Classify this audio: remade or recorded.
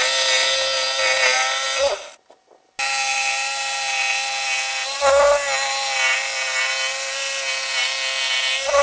recorded